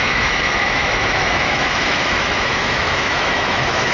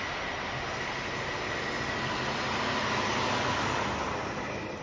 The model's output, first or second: first